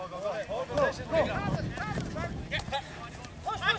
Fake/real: real